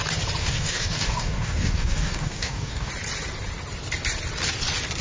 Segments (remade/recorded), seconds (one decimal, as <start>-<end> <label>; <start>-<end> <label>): 0.0-0.4 recorded; 0.4-2.9 remade; 2.9-5.0 recorded